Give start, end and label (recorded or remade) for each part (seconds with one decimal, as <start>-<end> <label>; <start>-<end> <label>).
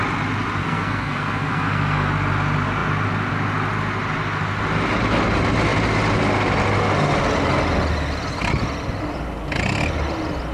0.0-0.6 recorded; 0.6-2.1 remade; 2.1-10.5 recorded